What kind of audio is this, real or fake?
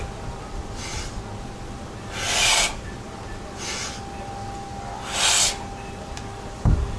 real